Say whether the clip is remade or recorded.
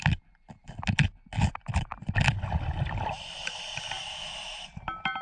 recorded